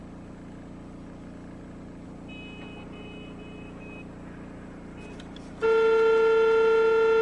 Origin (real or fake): real